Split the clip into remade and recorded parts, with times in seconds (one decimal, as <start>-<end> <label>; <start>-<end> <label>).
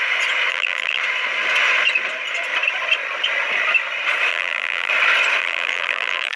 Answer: 0.0-0.5 recorded; 0.5-1.0 remade; 1.0-4.3 recorded; 4.3-4.9 remade; 4.9-5.4 recorded; 5.4-6.4 remade